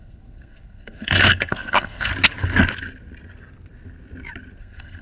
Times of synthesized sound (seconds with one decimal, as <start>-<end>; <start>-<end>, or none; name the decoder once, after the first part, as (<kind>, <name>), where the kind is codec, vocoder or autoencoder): 0.0-2.1 (codec, SNAC); 4.6-5.0